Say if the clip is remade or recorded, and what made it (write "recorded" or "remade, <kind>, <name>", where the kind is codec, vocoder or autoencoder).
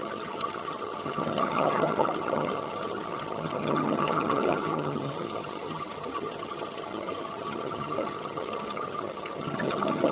remade, vocoder, HiFi-GAN